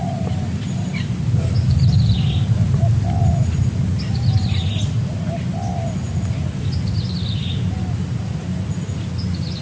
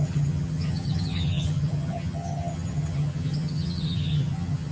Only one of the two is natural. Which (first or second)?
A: first